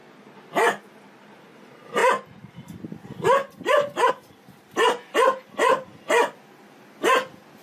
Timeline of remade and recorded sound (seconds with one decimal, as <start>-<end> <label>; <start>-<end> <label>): 0.0-5.9 recorded; 5.9-6.4 remade; 6.4-7.6 recorded